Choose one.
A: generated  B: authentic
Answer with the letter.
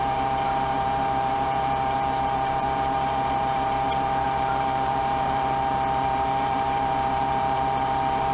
A